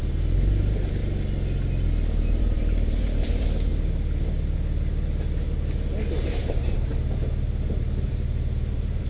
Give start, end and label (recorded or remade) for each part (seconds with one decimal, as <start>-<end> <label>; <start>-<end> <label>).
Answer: 0.0-1.0 remade; 1.0-2.4 recorded; 2.4-3.7 remade; 3.7-6.1 recorded; 6.1-6.9 remade; 6.9-8.1 recorded; 8.1-9.1 remade